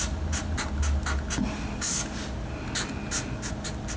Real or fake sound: real